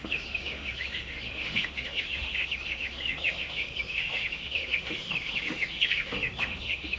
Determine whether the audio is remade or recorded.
remade